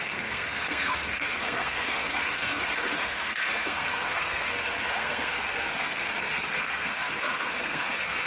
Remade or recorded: remade